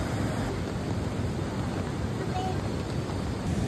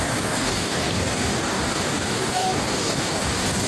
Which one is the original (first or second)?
first